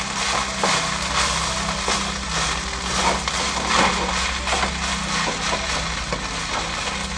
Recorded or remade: recorded